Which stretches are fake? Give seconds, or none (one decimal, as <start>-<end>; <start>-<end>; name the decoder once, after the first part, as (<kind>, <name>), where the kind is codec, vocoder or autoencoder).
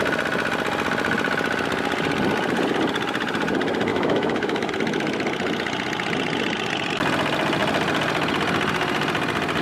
3.9-4.7 (autoencoder, DAC-VAE)